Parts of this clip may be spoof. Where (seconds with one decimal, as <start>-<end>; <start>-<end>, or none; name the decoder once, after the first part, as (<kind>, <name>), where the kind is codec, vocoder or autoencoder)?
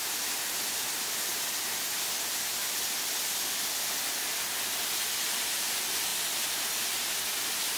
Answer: none